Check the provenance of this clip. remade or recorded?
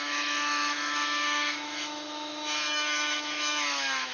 remade